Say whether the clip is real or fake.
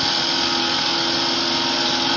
real